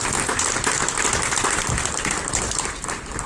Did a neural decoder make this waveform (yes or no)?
no